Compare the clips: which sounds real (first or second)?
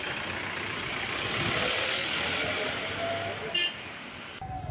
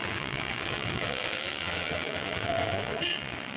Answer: first